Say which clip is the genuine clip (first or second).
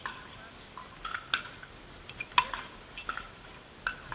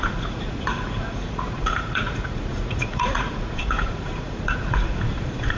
first